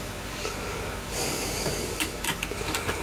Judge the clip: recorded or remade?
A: remade